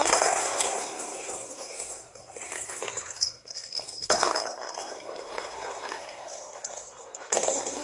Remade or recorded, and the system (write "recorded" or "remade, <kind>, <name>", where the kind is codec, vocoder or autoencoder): remade, codec, SNAC